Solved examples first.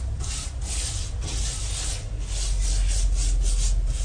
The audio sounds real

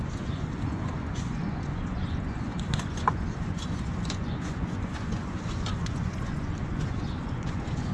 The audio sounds fake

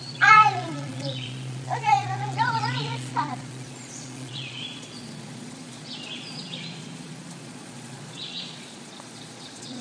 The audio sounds fake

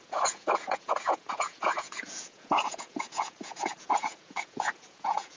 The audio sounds fake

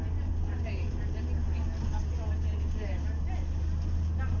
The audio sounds real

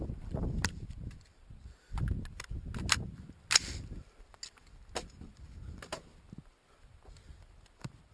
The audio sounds real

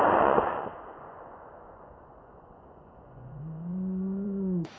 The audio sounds fake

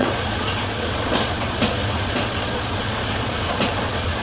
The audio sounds fake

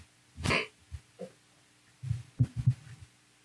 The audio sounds real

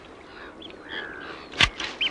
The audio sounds real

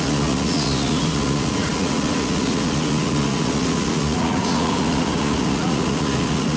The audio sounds fake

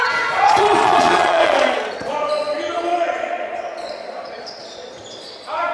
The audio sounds fake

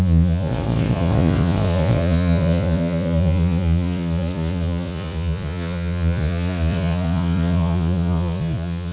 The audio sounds fake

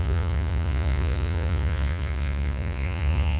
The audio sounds fake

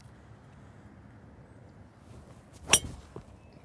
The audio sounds real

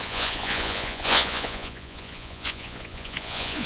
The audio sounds fake